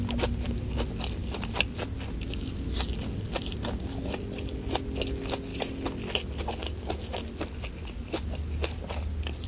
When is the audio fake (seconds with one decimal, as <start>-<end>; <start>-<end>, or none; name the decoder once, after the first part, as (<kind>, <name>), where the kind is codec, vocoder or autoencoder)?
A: none